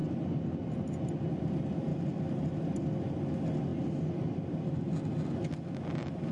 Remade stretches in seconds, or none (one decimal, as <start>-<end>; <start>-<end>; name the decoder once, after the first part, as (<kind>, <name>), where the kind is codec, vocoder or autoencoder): none